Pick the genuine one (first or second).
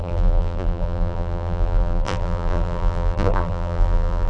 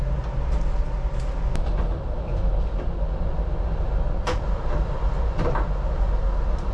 second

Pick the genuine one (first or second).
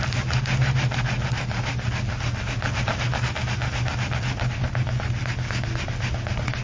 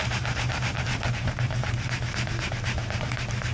first